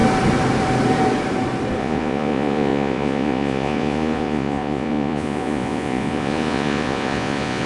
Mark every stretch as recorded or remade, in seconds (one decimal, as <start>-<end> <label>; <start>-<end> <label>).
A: 0.0-1.8 recorded; 1.8-7.7 remade